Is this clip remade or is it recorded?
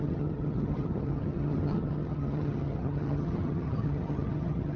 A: remade